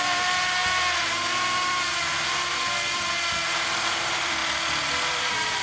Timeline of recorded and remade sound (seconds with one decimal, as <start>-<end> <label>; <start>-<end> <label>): 0.0-0.6 remade; 0.6-4.0 recorded; 4.0-4.4 remade; 4.4-5.1 recorded; 5.1-5.6 remade